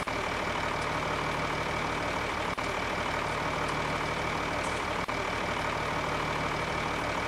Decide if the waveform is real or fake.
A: real